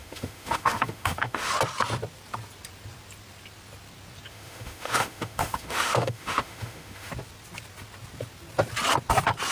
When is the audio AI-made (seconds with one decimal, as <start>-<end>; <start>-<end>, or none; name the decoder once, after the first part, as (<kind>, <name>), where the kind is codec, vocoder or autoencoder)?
0.0-1.5 (autoencoder, DAC-VAE); 4.3-7.1